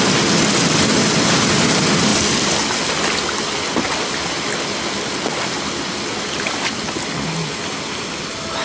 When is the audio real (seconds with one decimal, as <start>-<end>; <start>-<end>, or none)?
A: 0.0-8.6